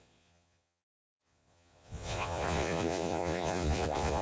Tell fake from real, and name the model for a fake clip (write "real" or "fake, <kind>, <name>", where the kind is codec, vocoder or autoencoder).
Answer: fake, vocoder, Vocos